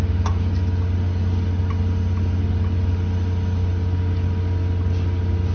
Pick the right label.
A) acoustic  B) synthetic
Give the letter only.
A